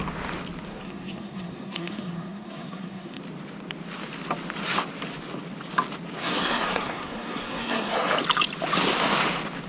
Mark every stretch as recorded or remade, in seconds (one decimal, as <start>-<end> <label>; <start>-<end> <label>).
0.0-0.7 recorded; 0.7-3.2 remade; 3.2-6.2 recorded; 6.2-8.1 remade; 8.1-9.7 recorded